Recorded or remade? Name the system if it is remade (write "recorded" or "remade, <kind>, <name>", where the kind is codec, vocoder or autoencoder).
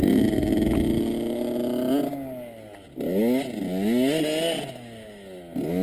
recorded